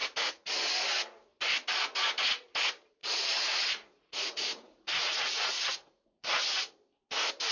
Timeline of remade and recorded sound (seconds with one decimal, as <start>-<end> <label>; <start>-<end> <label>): 0.0-0.5 remade; 0.5-3.0 recorded; 3.0-6.3 remade; 6.3-7.5 recorded